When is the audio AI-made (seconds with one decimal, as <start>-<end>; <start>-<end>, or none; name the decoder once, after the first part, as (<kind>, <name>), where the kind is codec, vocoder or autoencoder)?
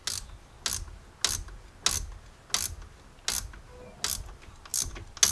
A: none